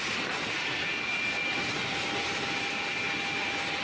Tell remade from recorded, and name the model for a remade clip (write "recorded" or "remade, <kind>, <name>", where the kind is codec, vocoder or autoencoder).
recorded